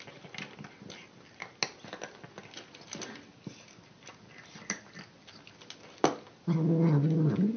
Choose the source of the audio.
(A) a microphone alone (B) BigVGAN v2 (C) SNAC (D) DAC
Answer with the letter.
A